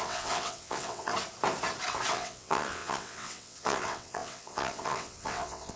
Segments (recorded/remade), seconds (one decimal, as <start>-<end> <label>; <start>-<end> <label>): 0.0-1.1 remade; 1.1-2.1 recorded; 2.1-5.8 remade